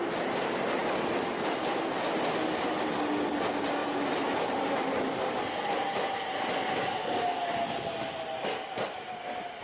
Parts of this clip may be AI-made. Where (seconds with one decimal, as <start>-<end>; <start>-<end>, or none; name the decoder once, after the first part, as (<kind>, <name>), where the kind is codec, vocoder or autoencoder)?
0.8-2.5 (vocoder, BigVGAN v2); 3.8-5.4